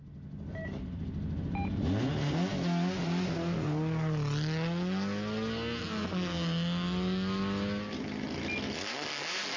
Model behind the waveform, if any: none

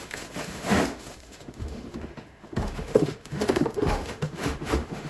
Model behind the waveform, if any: autoencoder, DAC-VAE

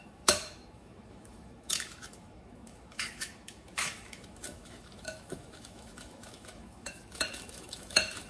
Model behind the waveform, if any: autoencoder, DAC-VAE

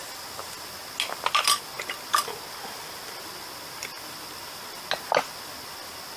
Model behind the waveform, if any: none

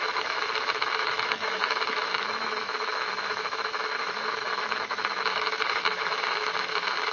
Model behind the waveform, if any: autoencoder, DAC-VAE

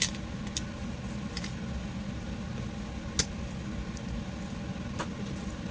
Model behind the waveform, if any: none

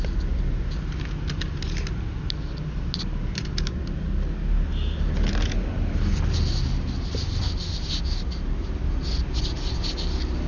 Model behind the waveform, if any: none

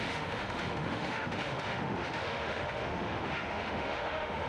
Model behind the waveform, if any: autoencoder, DAC-VAE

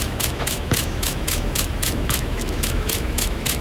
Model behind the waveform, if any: autoencoder, DAC-VAE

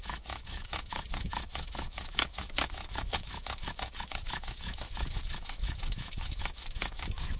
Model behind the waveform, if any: autoencoder, DAC-VAE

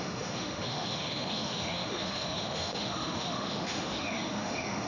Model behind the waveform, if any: autoencoder, DAC-VAE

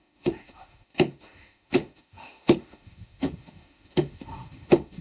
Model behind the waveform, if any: autoencoder, DAC-VAE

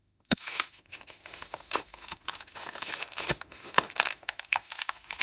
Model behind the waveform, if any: autoencoder, DAC-VAE